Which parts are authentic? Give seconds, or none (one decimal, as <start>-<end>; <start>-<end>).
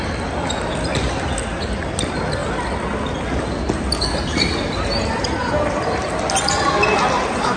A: 0.0-7.6